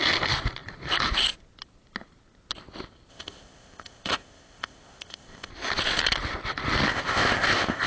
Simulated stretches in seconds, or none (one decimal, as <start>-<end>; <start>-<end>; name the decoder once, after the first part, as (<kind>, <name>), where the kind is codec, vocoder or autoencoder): 3.1-5.5 (codec, ZipCodec); 6.9-7.9